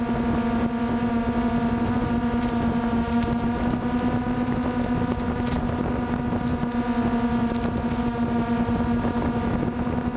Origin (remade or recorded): recorded